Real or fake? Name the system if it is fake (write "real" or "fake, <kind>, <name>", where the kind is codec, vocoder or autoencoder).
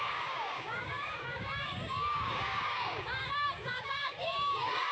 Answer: fake, codec, DAC